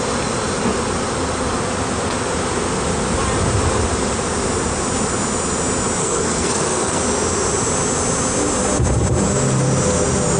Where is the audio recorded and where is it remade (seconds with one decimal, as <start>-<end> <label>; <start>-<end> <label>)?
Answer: 0.0-6.0 recorded; 6.0-7.0 remade; 7.0-10.4 recorded